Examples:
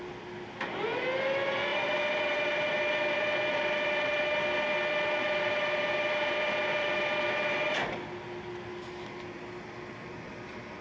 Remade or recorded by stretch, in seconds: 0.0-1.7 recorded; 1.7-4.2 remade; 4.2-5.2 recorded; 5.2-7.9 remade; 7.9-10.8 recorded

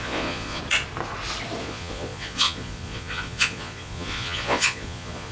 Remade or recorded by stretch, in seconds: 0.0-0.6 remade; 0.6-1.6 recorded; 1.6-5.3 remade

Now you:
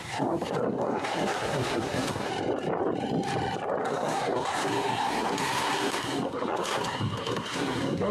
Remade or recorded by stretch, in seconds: 0.0-2.3 remade; 2.3-3.8 recorded; 3.8-8.1 remade

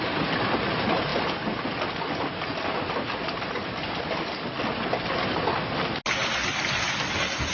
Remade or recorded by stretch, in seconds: 0.0-7.5 recorded

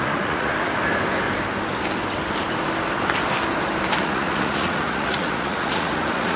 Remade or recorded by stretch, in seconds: 0.0-0.5 remade; 0.5-4.0 recorded; 4.0-6.4 remade